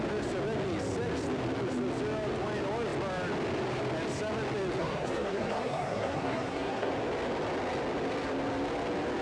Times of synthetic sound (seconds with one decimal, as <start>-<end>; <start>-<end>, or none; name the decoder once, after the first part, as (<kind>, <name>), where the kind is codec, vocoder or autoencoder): 4.8-6.9 (codec, SNAC)